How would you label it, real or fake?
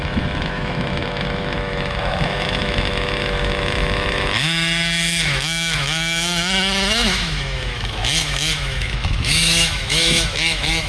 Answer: fake